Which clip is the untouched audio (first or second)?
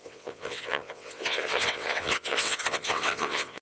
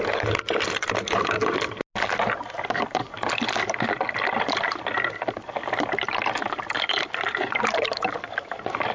second